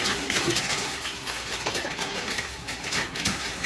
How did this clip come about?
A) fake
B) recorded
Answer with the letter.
A